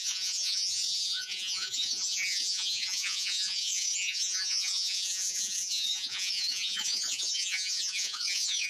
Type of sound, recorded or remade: remade